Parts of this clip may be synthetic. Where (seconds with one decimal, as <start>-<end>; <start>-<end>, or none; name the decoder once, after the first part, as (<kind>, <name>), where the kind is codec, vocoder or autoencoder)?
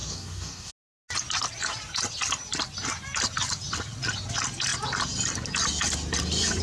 0.0-0.7 (codec, DAC)